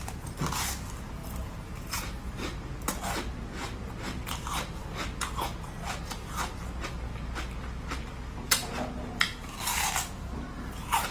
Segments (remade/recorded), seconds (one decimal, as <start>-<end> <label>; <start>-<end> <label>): 0.0-1.2 recorded; 1.2-2.0 remade; 2.0-11.1 recorded